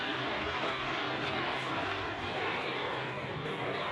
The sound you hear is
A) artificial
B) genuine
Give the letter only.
A